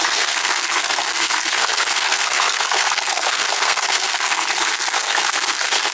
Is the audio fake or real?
fake